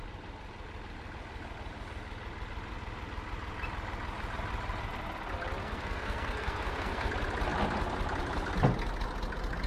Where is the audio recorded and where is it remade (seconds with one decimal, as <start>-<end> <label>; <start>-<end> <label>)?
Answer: 0.0-5.6 recorded; 5.6-7.1 remade; 7.1-9.7 recorded